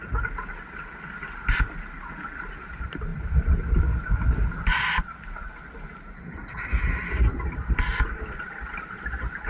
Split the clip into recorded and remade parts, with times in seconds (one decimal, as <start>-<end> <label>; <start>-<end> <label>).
0.0-9.5 recorded